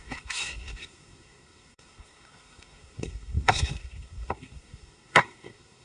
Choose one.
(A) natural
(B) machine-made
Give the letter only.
B